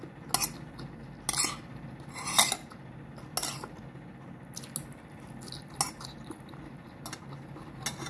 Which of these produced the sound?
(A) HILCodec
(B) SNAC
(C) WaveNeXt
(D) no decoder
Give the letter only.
D